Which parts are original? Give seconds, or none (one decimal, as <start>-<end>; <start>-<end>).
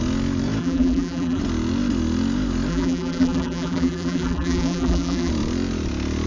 0.0-0.6; 1.4-2.7; 5.3-6.3